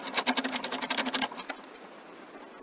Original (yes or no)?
yes